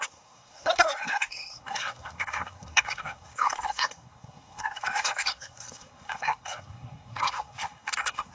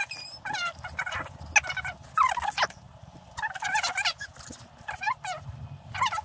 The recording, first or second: second